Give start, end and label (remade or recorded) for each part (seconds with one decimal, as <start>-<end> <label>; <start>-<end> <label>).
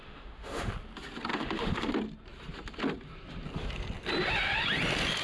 0.0-0.7 remade; 0.7-1.3 recorded; 1.3-1.9 remade; 1.9-5.2 recorded